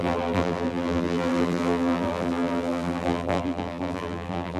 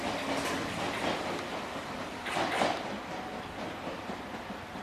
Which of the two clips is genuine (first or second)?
second